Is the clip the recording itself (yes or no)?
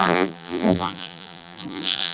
no